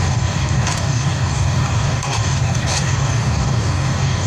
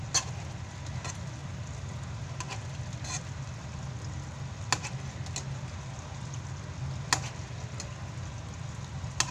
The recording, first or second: second